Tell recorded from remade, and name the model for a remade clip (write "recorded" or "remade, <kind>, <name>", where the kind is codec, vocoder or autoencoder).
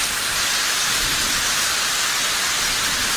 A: recorded